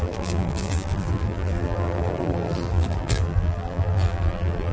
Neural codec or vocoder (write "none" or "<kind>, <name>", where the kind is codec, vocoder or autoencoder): vocoder, BigVGAN v2